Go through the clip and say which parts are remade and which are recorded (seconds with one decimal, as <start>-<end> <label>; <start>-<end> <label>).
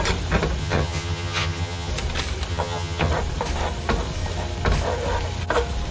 0.0-0.6 recorded; 0.6-1.9 remade; 1.9-2.5 recorded; 2.5-3.1 remade; 3.1-5.9 recorded